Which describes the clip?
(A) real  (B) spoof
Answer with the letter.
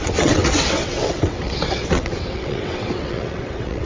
B